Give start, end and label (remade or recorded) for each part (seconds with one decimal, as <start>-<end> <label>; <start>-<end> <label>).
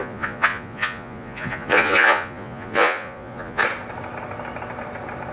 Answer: 0.0-3.6 remade; 3.6-5.3 recorded